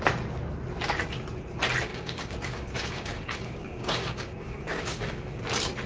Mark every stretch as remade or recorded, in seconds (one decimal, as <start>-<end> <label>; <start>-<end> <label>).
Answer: 0.0-1.9 recorded; 1.9-5.4 remade; 5.4-5.9 recorded